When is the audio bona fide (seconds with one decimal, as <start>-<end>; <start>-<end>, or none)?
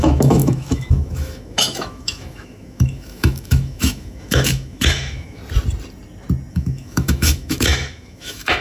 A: 5.4-6.5